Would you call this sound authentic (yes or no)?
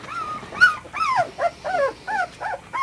yes